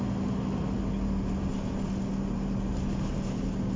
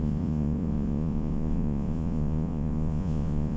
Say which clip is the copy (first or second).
second